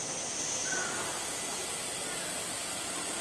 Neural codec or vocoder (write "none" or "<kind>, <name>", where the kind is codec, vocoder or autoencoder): none